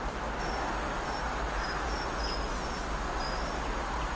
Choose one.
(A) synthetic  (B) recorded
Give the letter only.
B